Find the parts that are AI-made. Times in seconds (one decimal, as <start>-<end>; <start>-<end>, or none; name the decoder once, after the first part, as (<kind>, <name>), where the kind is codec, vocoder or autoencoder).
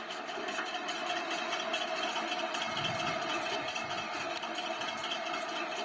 none